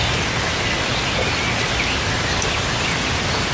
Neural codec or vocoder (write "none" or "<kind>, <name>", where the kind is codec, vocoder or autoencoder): none